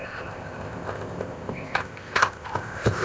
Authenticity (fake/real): fake